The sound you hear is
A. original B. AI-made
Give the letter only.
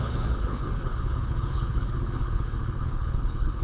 B